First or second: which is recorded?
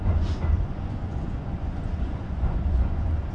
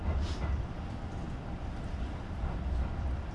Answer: second